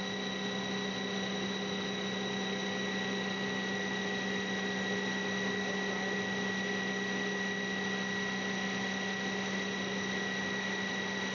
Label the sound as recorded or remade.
recorded